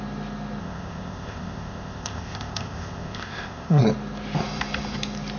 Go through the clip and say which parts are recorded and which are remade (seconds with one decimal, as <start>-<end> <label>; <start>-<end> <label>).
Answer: 0.0-0.6 recorded; 0.6-3.8 remade; 3.8-5.4 recorded